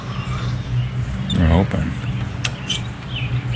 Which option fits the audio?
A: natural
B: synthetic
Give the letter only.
A